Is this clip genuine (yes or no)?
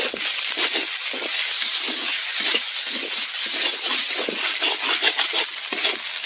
yes